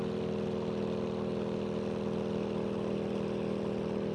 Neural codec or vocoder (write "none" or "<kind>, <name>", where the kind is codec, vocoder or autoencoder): none